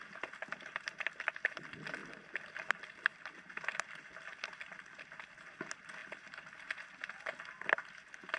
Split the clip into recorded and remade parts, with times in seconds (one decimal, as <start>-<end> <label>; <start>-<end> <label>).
0.0-2.0 recorded; 2.0-2.7 remade; 2.7-3.1 recorded; 3.1-3.6 remade; 3.6-8.4 recorded